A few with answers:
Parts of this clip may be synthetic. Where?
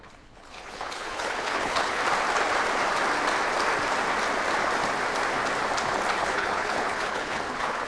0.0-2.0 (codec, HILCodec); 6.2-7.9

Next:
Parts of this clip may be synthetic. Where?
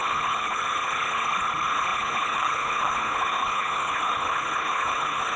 0.0-5.4 (codec, HILCodec)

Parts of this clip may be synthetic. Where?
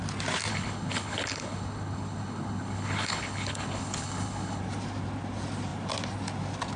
0.5-4.6 (codec, HILCodec)